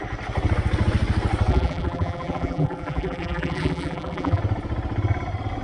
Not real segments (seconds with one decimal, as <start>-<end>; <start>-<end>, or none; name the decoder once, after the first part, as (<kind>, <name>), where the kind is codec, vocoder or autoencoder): 1.5-4.4 (vocoder, BigVGAN v2)